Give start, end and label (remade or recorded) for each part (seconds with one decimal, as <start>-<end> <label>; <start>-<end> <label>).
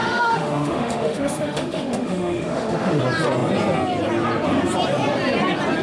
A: 0.0-3.0 remade; 3.0-5.8 recorded